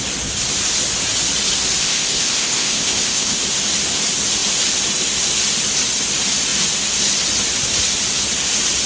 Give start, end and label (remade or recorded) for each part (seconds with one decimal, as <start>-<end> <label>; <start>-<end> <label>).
0.0-1.8 recorded; 1.8-3.4 remade; 3.4-8.9 recorded